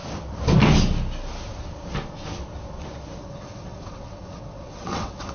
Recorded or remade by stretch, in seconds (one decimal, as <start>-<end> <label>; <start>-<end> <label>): 0.0-3.2 recorded; 3.2-5.3 remade